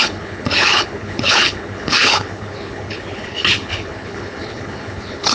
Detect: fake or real fake